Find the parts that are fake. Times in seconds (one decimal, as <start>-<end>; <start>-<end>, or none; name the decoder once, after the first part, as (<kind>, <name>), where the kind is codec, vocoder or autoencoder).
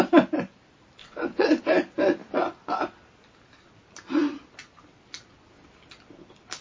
1.0-1.6 (vocoder, WaveNeXt)